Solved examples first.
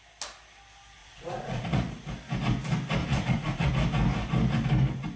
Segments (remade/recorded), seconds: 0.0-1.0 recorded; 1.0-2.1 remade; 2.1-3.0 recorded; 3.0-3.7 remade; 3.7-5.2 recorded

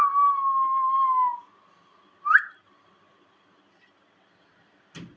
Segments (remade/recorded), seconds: 0.0-5.2 recorded

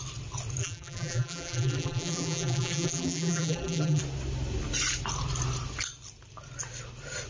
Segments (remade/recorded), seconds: 0.0-0.6 recorded; 0.6-4.0 remade; 4.0-7.3 recorded

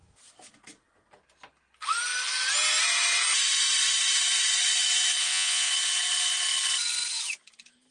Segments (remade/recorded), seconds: 0.0-5.2 recorded; 5.2-5.7 remade; 5.7-7.9 recorded

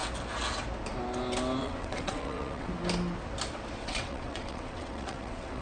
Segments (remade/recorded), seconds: 0.0-1.6 recorded; 1.6-2.7 remade; 2.7-3.8 recorded; 3.8-5.6 remade

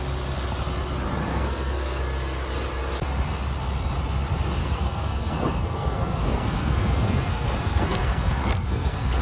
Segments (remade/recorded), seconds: 0.0-1.3 recorded; 1.3-2.0 remade; 2.0-4.6 recorded; 4.6-9.2 remade

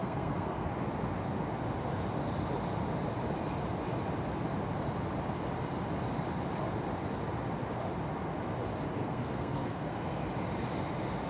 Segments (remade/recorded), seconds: 0.0-0.7 remade; 0.7-9.0 recorded; 9.0-10.2 remade; 10.2-11.3 recorded